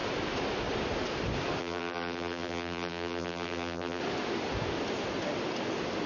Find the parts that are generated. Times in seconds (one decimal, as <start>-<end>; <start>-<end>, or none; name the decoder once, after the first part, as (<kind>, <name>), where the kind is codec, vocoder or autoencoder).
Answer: 1.6-4.0 (vocoder, BigVGAN v2)